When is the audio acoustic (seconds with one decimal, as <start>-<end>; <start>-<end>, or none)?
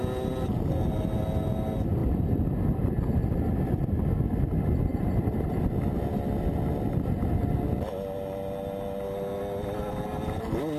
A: 0.0-4.9; 5.6-10.8